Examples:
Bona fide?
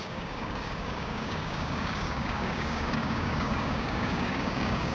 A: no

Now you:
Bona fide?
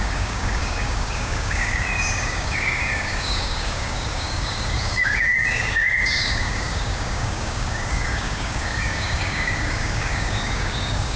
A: no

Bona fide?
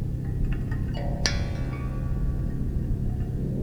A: yes